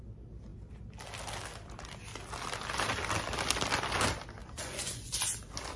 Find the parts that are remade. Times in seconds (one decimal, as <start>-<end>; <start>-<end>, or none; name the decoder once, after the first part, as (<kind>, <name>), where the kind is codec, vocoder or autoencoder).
4.4-5.1 (vocoder, Vocos)